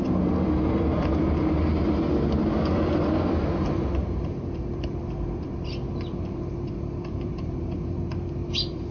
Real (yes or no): no